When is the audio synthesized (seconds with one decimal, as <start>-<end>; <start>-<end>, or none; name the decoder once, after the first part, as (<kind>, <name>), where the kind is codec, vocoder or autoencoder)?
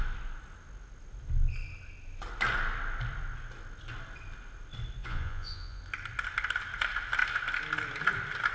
5.0-5.8 (vocoder, Vocos)